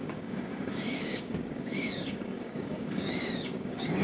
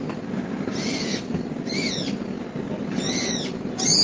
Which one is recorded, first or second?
second